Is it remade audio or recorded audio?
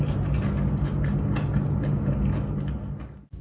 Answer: recorded